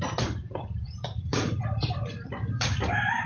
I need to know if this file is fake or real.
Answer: fake